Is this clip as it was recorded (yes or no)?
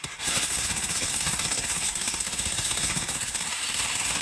no